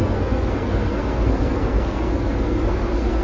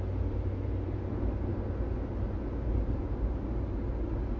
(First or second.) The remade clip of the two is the first